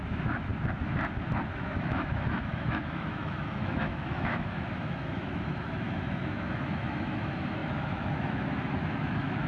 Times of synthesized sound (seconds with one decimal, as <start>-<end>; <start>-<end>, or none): 0.0-0.5; 1.5-9.5